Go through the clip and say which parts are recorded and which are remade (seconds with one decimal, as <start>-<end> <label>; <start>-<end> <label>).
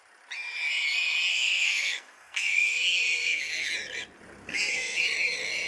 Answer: 0.0-1.3 recorded; 1.3-3.7 remade; 3.7-4.5 recorded; 4.5-5.0 remade; 5.0-5.7 recorded